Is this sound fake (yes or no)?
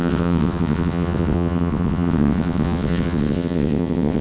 yes